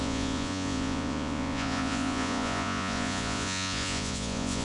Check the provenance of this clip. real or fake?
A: fake